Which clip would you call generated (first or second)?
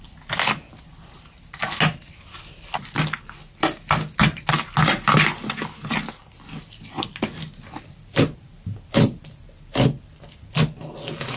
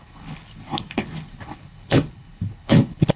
second